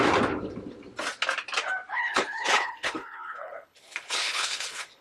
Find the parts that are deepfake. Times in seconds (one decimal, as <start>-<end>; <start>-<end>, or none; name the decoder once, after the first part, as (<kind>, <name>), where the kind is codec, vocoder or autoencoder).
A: 1.9-5.0 (codec, HILCodec)